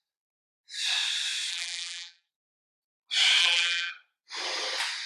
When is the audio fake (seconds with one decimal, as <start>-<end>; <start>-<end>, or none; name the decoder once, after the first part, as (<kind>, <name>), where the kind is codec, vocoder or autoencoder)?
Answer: 1.5-2.3 (vocoder, BigVGAN v2); 3.4-3.9